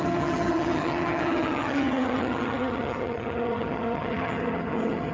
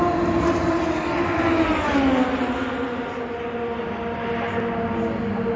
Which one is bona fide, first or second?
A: second